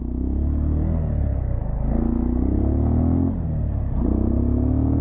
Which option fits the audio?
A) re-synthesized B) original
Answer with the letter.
B